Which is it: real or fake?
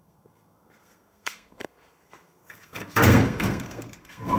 fake